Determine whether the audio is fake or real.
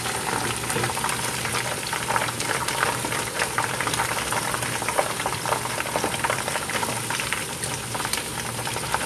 fake